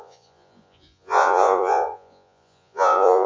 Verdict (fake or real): fake